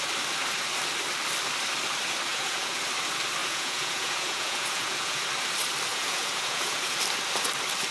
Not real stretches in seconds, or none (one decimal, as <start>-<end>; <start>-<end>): 2.3-2.8; 3.4-5.2; 5.9-7.0